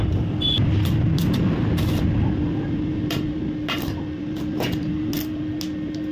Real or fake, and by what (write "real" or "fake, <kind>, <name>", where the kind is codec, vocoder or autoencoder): real